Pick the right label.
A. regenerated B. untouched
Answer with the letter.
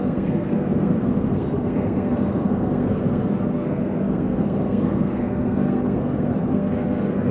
A